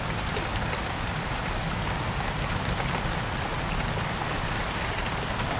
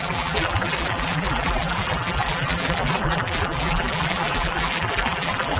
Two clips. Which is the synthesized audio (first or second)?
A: second